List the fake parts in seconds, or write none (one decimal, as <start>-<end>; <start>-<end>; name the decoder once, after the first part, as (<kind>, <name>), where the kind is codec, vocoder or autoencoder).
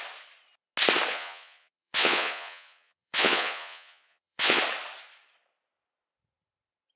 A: 1.1-4.6 (vocoder, Vocos)